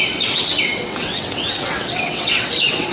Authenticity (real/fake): fake